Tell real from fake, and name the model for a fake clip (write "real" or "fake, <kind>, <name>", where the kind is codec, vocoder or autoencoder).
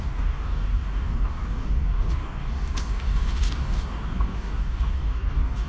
fake, codec, DAC